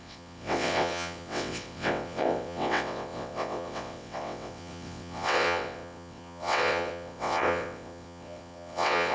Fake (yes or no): yes